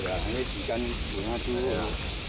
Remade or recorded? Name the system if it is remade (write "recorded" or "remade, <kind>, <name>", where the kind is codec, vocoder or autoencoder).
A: recorded